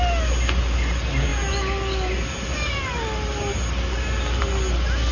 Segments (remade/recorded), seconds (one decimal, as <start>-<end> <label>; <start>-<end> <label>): 0.0-5.1 recorded